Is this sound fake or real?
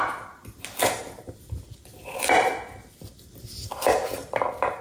real